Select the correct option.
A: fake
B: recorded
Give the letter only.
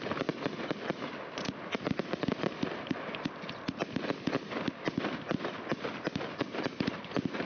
B